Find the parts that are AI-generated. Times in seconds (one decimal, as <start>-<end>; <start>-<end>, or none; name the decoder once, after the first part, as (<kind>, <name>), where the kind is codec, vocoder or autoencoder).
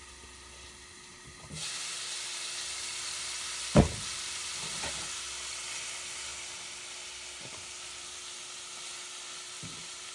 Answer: none